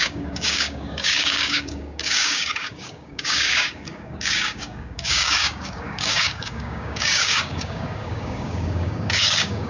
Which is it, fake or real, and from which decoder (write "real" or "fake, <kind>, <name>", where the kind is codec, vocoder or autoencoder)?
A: fake, codec, DAC